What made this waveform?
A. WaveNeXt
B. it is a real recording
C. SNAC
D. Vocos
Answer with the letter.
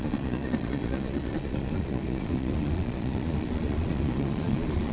D